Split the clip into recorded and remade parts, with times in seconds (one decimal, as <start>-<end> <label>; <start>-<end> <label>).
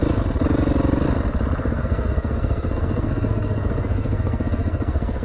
0.0-1.6 recorded; 1.6-5.2 remade